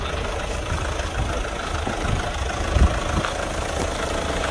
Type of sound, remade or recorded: recorded